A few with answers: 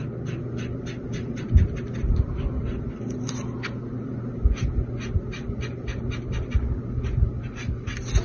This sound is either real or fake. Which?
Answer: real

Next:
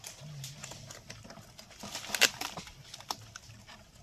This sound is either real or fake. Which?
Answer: real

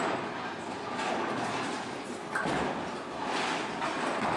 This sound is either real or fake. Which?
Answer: real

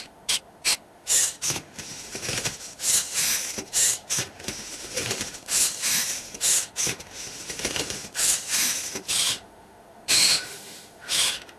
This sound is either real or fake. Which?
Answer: fake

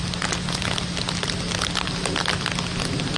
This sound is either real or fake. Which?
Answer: real